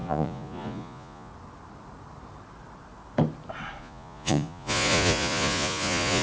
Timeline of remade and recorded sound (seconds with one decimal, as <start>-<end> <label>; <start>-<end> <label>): 0.0-1.3 remade; 1.3-3.8 recorded; 3.8-6.2 remade

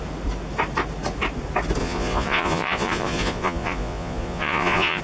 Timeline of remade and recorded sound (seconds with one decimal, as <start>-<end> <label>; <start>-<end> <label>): 0.0-1.8 recorded; 1.8-5.0 remade

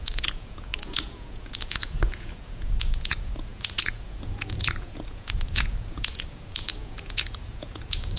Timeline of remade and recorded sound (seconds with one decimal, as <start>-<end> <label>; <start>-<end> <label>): 0.0-8.2 remade

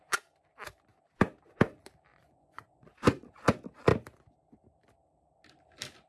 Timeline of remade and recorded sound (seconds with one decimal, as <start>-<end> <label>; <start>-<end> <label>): 0.0-2.1 recorded; 2.1-3.4 remade; 3.4-6.1 recorded